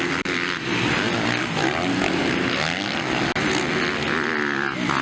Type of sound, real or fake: real